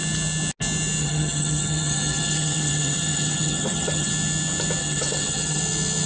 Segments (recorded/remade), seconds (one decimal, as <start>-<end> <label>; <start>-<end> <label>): 0.0-1.0 recorded; 1.0-4.1 remade; 4.1-4.8 recorded; 4.8-5.6 remade; 5.6-6.1 recorded

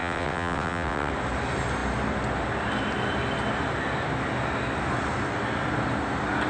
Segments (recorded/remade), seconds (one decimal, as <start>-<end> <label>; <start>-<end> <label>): 0.0-1.1 remade; 1.1-6.5 recorded

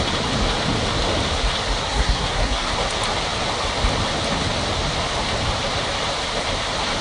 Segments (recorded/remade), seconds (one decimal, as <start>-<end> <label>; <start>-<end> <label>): 0.0-1.8 recorded; 1.8-2.7 remade; 2.7-7.0 recorded

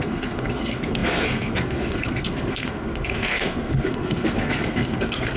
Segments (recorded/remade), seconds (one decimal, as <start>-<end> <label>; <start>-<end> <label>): 0.0-5.4 remade

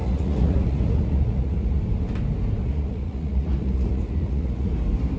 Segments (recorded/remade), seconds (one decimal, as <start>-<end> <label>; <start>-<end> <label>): 0.0-1.8 remade; 1.8-2.6 recorded; 2.6-4.7 remade; 4.7-5.2 recorded

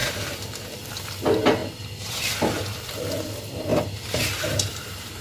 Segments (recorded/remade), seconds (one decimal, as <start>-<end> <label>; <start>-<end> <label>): 0.0-0.9 remade; 0.9-3.7 recorded; 3.7-5.2 remade

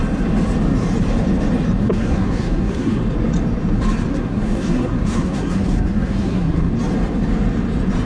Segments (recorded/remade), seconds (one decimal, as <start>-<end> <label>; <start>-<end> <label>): 0.0-1.8 recorded; 1.8-3.0 remade; 3.0-4.1 recorded; 4.1-6.7 remade; 6.7-8.1 recorded